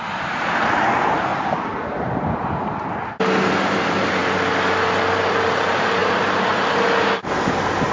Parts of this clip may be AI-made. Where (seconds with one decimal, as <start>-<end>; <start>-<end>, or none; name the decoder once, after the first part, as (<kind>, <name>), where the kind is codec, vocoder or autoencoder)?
0.0-1.3 (vocoder, BigVGAN v2); 3.7-4.2; 5.1-7.9